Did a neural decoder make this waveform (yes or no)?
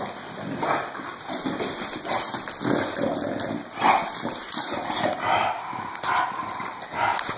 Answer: no